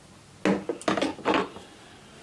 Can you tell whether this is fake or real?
real